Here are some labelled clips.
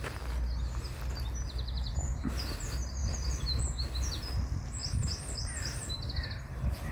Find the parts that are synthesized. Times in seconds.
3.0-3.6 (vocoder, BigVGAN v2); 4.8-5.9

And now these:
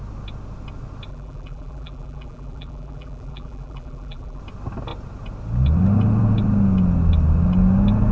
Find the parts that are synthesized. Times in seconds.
1.1-4.4 (vocoder, BigVGAN v2)

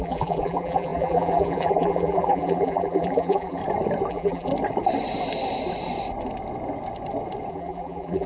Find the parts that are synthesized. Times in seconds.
0.0-3.6 (vocoder, BigVGAN v2); 4.1-4.5; 7.5-8.3

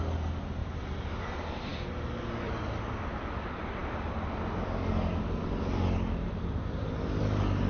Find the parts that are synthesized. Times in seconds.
0.6-1.2 (vocoder, BigVGAN v2)